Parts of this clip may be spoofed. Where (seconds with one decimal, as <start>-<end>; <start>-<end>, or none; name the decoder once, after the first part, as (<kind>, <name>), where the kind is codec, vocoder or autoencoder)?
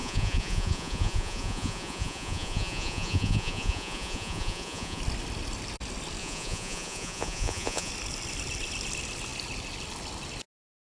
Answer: 0.0-5.0 (vocoder, Vocos); 6.2-7.9